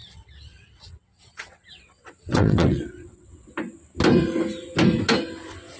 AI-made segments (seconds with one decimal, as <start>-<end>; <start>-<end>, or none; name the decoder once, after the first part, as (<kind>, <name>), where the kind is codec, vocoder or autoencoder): 0.0-3.5 (vocoder, WaveNeXt)